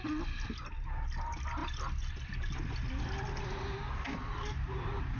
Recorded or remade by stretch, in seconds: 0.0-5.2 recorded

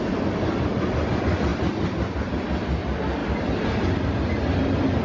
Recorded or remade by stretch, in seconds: 0.0-5.0 recorded

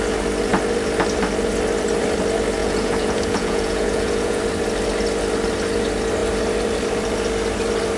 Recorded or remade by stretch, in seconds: 0.0-2.6 recorded; 2.6-4.4 remade; 4.4-8.0 recorded

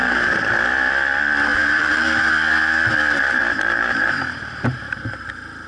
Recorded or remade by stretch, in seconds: 0.0-0.5 remade; 0.5-1.5 recorded; 1.5-2.3 remade; 2.3-3.4 recorded; 3.4-5.3 remade; 5.3-5.7 recorded